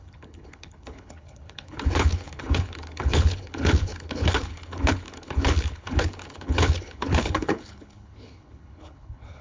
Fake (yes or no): yes